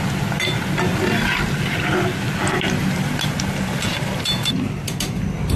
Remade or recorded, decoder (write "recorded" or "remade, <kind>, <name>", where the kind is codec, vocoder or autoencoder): recorded